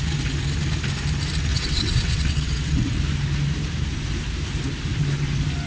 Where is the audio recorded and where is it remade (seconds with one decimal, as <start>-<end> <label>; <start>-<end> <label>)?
0.0-1.5 recorded; 1.5-3.0 remade; 3.0-5.7 recorded